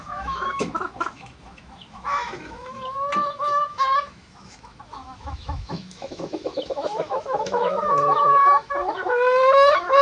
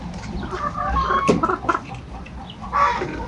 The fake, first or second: first